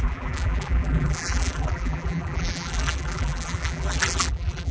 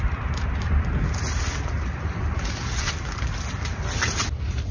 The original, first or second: second